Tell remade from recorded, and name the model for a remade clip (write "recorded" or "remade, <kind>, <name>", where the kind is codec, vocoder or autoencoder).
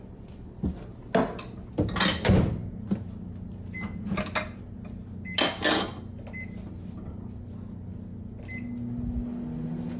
recorded